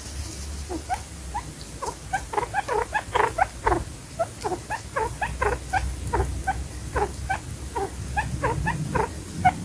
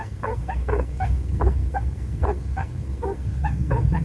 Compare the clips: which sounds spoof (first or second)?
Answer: second